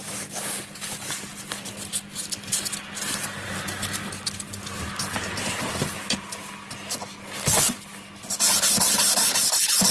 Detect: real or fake real